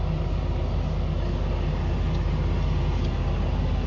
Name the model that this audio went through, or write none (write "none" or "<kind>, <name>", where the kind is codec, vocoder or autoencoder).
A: none